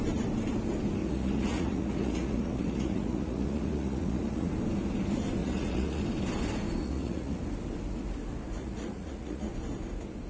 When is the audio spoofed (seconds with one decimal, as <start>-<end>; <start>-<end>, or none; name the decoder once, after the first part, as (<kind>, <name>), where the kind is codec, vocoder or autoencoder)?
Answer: 1.0-4.5 (vocoder, Vocos); 5.4-6.0; 6.8-7.4; 8.6-9.5